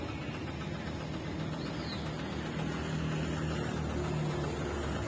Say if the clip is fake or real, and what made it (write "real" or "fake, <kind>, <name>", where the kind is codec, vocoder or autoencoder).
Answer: real